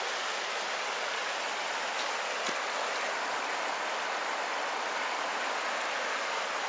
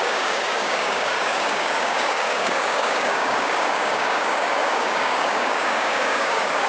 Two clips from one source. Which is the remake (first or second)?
second